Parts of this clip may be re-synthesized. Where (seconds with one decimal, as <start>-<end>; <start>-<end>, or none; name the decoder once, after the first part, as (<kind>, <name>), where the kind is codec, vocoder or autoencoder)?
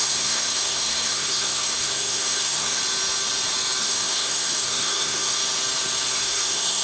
0.0-2.8 (codec, SNAC); 3.8-5.4; 6.2-6.8